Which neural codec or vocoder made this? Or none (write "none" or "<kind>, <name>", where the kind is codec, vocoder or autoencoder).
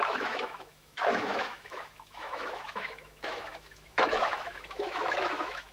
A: autoencoder, DAC-VAE